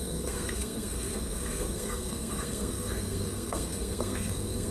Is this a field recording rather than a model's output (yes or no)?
no